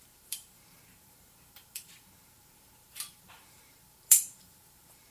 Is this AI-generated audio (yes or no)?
yes